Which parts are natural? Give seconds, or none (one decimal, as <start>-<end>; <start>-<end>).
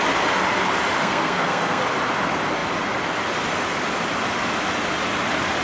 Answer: 0.0-1.0; 1.8-5.6